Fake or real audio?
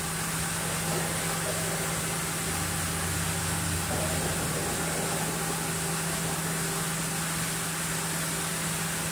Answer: real